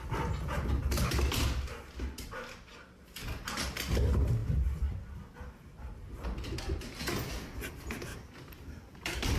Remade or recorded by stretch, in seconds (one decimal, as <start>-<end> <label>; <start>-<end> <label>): 0.0-8.1 recorded; 8.1-9.4 remade